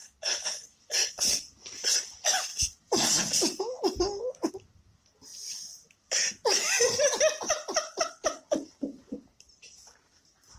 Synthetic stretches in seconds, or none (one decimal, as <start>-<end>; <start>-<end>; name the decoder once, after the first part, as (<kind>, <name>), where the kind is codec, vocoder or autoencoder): none